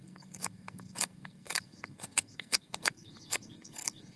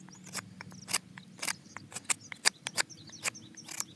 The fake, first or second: first